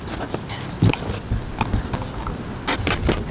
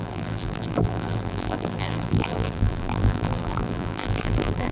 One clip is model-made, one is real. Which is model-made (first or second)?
second